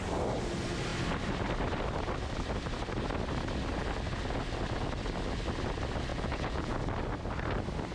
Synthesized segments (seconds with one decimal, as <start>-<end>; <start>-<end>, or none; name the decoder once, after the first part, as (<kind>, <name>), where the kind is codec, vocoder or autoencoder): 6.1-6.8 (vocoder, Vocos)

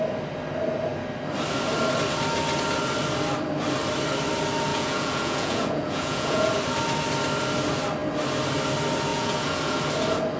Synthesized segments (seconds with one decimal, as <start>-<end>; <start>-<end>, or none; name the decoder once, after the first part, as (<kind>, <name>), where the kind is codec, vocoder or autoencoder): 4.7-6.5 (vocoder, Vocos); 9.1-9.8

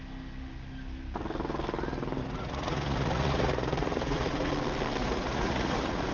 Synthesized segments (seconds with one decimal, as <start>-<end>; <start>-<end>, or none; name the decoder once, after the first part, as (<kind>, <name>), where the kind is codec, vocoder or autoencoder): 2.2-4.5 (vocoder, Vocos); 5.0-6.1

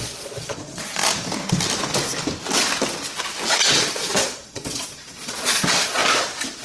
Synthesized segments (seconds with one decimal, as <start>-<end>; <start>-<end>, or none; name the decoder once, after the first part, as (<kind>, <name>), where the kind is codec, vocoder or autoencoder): 0.0-1.0 (vocoder, Vocos); 3.8-6.0

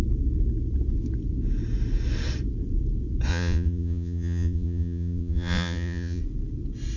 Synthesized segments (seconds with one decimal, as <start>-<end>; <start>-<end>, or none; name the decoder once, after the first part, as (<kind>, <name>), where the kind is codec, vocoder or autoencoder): 3.3-6.2 (vocoder, Vocos)